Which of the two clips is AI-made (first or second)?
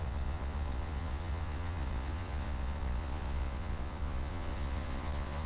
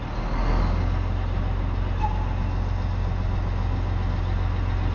first